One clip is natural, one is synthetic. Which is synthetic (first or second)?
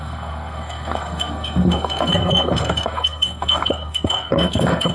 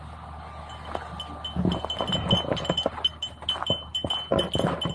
first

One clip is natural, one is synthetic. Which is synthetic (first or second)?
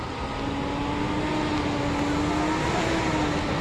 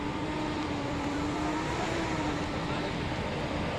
second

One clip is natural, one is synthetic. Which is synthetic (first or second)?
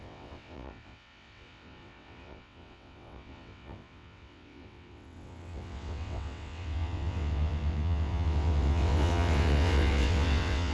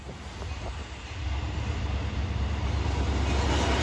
first